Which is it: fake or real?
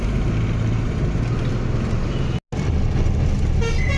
real